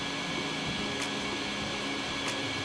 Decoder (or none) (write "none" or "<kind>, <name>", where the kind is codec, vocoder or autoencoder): none